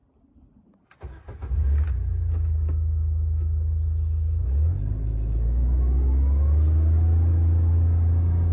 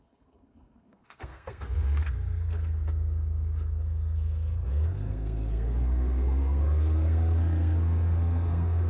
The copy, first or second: second